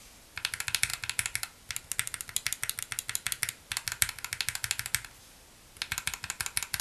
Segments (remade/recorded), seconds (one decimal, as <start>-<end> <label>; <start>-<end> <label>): 0.0-6.8 recorded